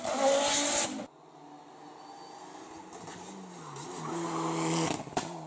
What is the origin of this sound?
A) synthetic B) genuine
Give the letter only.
B